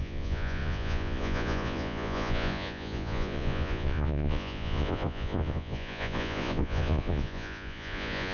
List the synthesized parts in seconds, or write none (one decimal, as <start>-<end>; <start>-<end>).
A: 0.0-8.3

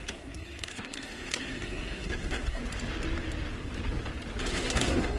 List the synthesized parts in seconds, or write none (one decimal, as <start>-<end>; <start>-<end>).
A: 0.0-2.6; 4.4-5.2

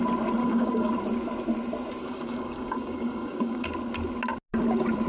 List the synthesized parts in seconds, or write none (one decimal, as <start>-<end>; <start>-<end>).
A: 0.4-0.9; 2.0-3.7

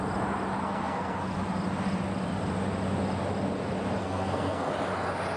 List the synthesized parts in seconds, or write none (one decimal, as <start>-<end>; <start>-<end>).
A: 0.6-1.2; 4.0-4.7

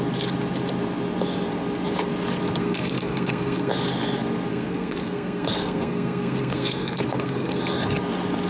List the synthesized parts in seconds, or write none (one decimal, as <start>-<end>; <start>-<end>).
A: 2.6-3.7; 4.5-7.6